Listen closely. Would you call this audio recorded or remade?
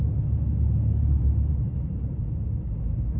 recorded